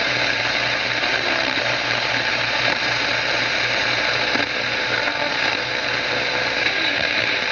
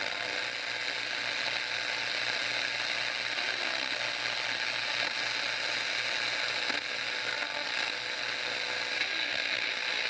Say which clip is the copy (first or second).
first